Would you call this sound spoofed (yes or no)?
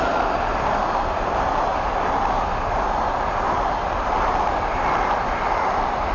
no